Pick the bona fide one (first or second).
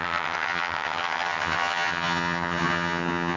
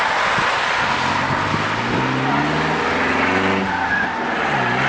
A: second